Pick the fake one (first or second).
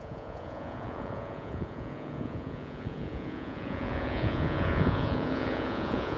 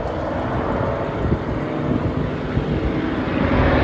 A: first